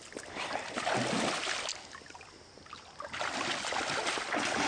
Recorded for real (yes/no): yes